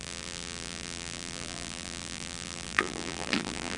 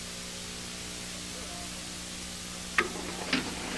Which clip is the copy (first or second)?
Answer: first